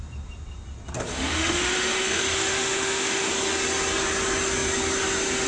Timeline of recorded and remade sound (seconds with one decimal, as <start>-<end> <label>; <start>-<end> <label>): 0.0-1.1 recorded; 1.1-3.3 remade; 3.3-5.5 recorded